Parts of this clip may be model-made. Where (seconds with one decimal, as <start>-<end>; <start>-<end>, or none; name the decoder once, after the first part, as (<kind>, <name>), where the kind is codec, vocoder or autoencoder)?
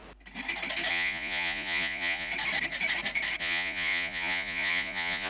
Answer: 0.9-2.3 (vocoder, Vocos); 3.4-5.3